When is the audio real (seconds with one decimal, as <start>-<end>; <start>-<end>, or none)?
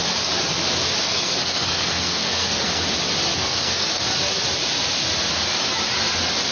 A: 0.0-1.0; 2.8-3.3; 4.0-6.5